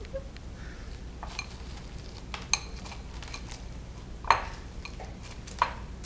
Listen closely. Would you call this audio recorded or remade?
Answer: recorded